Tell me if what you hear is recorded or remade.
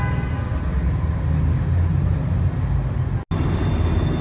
recorded